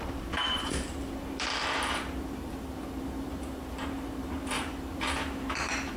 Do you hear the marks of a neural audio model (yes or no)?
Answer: yes